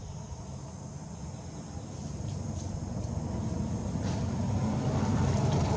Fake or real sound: real